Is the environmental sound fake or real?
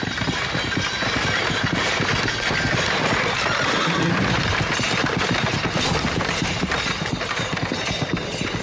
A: real